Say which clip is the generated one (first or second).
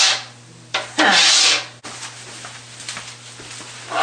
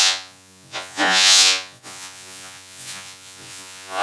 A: second